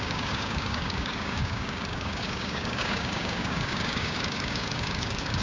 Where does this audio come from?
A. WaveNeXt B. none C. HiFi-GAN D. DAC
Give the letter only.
D